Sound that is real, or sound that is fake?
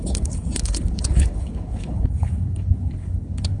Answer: fake